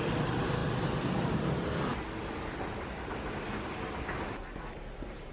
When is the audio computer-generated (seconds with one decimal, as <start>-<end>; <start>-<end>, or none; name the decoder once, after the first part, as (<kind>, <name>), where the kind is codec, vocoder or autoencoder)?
0.0-1.9 (vocoder, BigVGAN v2); 4.0-5.3